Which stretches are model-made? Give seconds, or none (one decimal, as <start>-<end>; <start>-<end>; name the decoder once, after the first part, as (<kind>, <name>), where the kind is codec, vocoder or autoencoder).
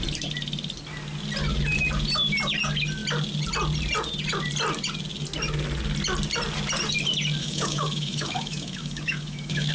7.4-9.7 (autoencoder, DAC-VAE)